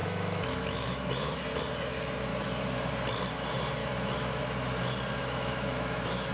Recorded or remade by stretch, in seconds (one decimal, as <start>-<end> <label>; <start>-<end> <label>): 0.0-1.4 remade; 1.4-2.3 recorded; 2.3-2.9 remade; 2.9-3.8 recorded; 3.8-4.4 remade; 4.4-5.2 recorded; 5.2-6.3 remade